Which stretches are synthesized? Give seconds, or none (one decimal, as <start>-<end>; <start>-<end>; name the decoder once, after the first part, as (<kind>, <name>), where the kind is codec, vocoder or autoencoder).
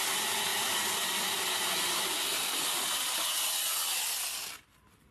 0.5-3.2 (vocoder, BigVGAN v2)